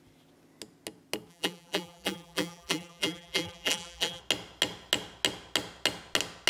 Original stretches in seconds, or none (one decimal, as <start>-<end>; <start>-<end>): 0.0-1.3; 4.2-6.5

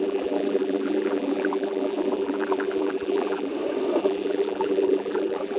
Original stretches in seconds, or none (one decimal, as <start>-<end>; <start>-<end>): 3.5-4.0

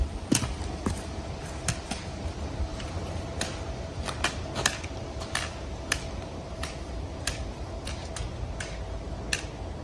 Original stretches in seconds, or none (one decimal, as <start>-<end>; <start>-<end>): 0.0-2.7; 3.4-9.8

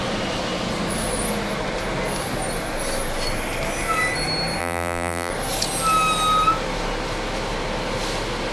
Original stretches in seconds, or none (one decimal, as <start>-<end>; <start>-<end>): 0.0-4.6; 5.3-8.5

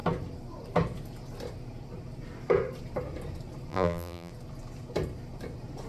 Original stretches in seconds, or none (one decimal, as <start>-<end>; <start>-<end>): 0.0-3.7; 4.3-5.9

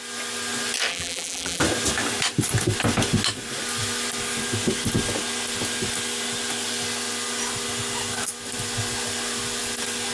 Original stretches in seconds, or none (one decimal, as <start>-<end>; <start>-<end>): 0.0-0.9; 1.6-10.1

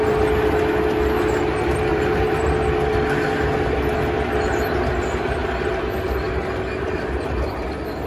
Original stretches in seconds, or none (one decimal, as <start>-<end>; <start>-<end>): 0.0-1.9; 2.6-8.1

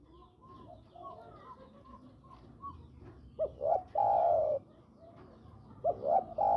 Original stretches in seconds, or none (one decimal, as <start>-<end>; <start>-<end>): 0.0-3.5; 5.3-6.6